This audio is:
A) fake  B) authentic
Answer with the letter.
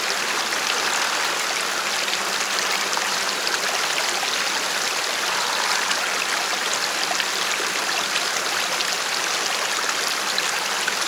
B